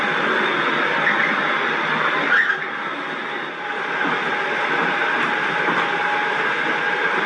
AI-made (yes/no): no